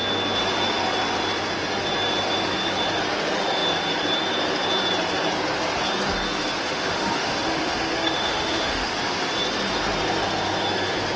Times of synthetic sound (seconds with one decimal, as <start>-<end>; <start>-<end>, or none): 6.6-8.9